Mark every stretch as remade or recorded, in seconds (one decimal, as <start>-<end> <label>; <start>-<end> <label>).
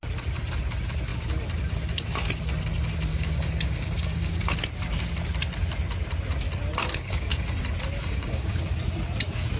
0.0-3.1 recorded; 3.1-4.4 remade; 4.4-6.8 recorded; 6.8-7.6 remade; 7.6-8.0 recorded; 8.0-8.7 remade; 8.7-9.6 recorded